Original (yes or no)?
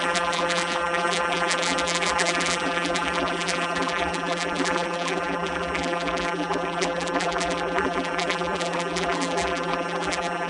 no